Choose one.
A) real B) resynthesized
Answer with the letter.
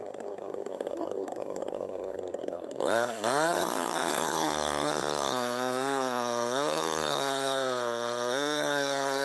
B